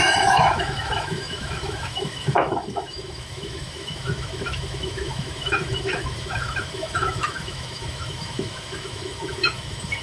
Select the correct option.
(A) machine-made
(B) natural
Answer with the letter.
A